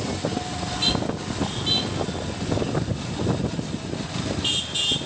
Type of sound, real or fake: real